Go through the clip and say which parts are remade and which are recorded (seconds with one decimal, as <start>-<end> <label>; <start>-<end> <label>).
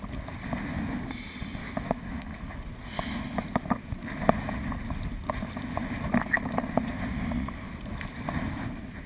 0.0-1.6 recorded; 1.6-2.4 remade; 2.4-9.1 recorded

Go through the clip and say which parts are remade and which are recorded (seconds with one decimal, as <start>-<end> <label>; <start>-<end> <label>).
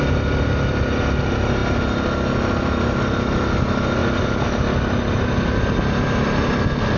0.0-7.0 recorded